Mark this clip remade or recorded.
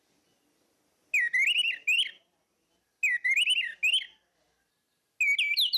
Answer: recorded